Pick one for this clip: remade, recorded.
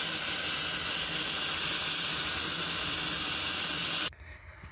recorded